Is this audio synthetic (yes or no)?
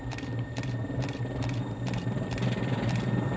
no